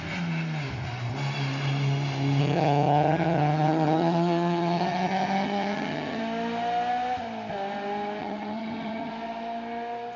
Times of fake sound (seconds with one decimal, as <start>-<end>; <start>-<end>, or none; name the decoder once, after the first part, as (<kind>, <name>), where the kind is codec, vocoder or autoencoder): 2.4-6.2 (vocoder, HiFi-GAN); 8.2-9.1